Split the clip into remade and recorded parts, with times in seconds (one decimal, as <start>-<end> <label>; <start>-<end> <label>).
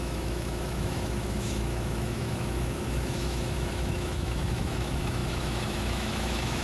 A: 0.0-6.6 remade